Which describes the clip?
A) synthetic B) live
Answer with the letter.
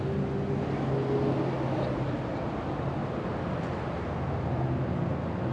B